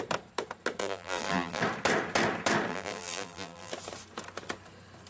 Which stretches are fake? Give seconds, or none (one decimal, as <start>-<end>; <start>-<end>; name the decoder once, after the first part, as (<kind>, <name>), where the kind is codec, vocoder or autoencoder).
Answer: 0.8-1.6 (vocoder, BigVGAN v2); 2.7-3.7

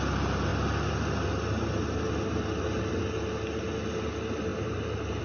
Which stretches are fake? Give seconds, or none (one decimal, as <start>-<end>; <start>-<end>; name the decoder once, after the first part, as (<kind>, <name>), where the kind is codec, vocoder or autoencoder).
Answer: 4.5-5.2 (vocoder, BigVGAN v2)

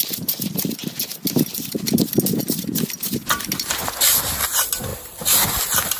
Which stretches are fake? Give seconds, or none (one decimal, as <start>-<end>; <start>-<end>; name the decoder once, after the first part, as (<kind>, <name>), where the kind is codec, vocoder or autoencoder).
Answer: none